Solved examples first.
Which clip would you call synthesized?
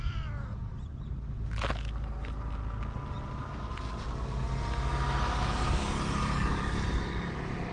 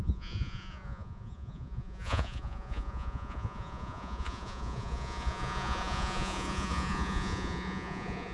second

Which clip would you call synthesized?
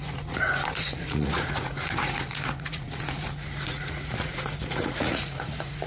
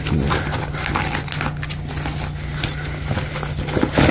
first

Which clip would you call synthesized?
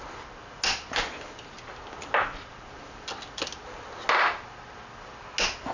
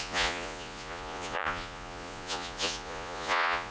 second